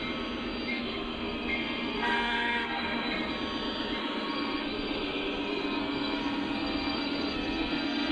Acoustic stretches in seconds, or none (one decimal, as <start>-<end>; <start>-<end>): 0.0-0.7; 3.3-4.0